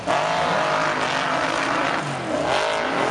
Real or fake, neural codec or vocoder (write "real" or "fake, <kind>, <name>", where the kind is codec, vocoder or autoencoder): real